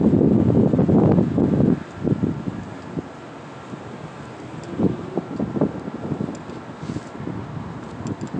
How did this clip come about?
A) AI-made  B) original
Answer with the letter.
B